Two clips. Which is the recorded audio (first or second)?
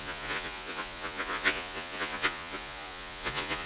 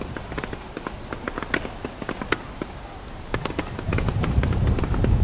second